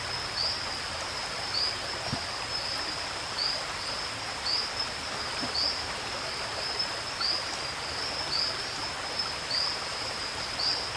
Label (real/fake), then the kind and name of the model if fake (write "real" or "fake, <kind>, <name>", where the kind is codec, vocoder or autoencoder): real